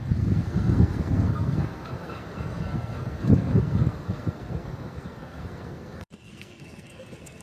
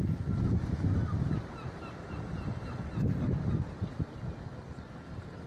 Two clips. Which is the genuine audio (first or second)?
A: second